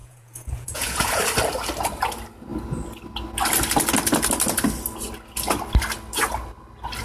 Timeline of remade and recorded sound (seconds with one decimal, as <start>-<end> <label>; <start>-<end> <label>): 0.0-1.2 remade; 1.2-7.0 recorded